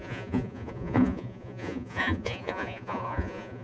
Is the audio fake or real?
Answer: fake